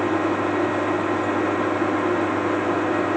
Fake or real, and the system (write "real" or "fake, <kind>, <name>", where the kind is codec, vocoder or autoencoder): real